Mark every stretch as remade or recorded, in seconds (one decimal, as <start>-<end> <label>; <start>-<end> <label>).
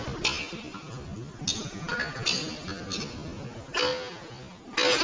0.0-5.0 recorded